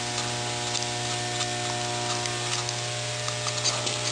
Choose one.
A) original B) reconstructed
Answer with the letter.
A